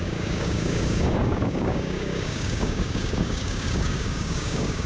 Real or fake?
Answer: fake